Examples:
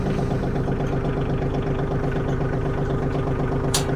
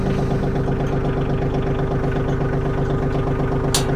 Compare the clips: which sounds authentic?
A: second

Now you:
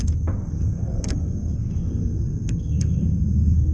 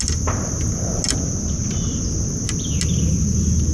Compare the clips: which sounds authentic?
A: second